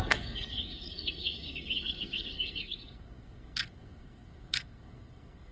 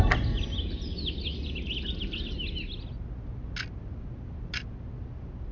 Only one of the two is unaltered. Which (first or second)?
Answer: second